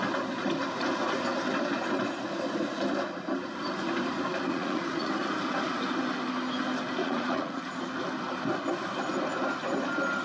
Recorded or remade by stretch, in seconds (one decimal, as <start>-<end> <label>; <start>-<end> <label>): 0.0-4.5 recorded; 4.5-5.1 remade; 5.1-7.0 recorded; 7.0-7.6 remade; 7.6-10.2 recorded